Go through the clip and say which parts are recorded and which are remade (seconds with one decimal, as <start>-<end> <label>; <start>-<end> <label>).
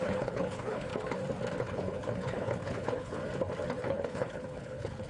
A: 0.0-0.9 remade; 0.9-1.6 recorded; 1.6-3.2 remade; 3.2-3.8 recorded; 3.8-5.1 remade